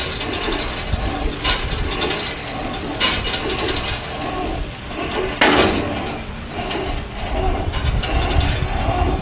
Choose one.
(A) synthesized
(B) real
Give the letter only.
B